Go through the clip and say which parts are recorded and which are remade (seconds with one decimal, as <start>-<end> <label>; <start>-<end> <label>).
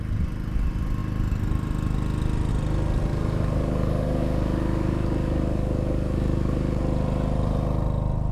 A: 0.0-3.1 recorded; 3.1-6.8 remade; 6.8-8.3 recorded